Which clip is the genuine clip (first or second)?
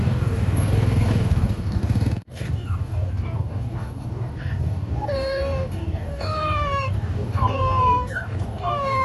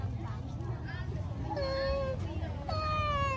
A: second